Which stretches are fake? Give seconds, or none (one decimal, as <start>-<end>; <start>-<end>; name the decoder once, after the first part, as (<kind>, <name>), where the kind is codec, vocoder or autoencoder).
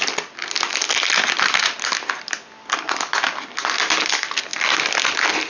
none